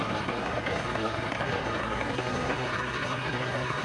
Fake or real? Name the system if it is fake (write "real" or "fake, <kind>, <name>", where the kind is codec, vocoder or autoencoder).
fake, codec, SNAC